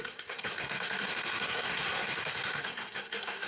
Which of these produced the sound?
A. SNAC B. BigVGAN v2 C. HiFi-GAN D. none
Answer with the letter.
A